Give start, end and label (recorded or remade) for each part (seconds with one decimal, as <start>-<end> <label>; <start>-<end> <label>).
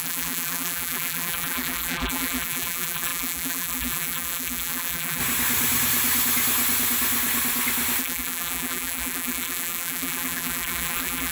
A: 0.0-5.2 remade; 5.2-8.0 recorded; 8.0-11.3 remade